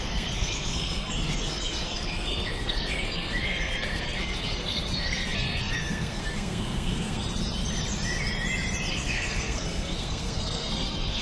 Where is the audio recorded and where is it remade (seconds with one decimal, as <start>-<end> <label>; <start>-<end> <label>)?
0.0-7.2 remade; 7.2-8.9 recorded; 8.9-11.2 remade